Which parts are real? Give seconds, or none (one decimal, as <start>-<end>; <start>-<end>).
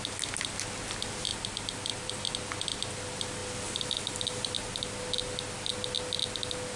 0.0-1.3; 2.2-6.8